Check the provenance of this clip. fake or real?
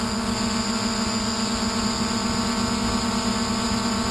real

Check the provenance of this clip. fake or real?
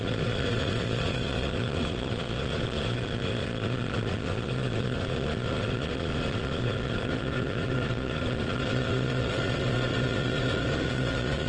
fake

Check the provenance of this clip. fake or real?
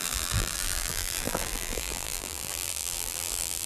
fake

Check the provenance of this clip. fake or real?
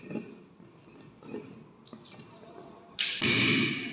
real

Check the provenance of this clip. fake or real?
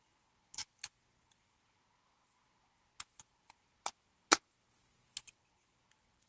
real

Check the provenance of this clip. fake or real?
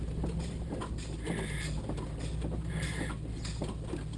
real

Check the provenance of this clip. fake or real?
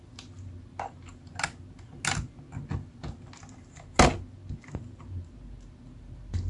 real